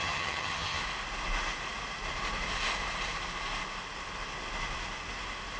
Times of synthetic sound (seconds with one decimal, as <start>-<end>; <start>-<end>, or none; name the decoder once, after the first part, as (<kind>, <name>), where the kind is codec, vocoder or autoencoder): 0.0-0.8 (vocoder, HiFi-GAN)

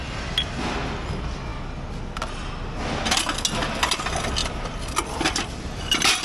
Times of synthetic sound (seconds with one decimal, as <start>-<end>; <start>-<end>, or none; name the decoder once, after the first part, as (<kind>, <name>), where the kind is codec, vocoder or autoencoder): 4.4-5.6 (vocoder, BigVGAN v2)

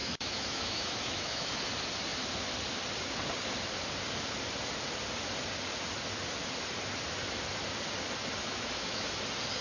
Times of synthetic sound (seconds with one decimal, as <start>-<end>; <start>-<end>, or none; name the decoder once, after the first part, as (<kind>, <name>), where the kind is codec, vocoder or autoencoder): 0.0-1.5 (autoencoder, DAC-VAE); 8.4-9.1